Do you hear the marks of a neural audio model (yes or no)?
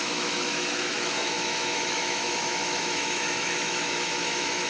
yes